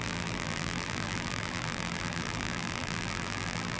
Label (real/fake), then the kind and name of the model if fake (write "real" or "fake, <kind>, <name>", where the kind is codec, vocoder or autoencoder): fake, vocoder, BigVGAN v2